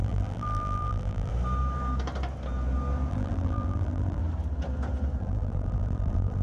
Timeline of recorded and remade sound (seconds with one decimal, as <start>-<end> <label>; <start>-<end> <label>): 0.0-1.3 remade; 1.3-3.1 recorded; 3.1-4.2 remade; 4.2-5.2 recorded; 5.2-6.4 remade